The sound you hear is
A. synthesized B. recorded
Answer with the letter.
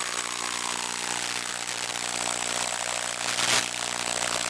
B